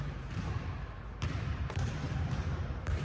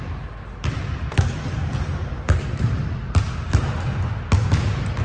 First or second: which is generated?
first